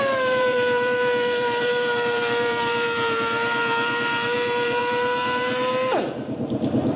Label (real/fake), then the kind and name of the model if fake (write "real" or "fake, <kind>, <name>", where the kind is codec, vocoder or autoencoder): fake, vocoder, BigVGAN v2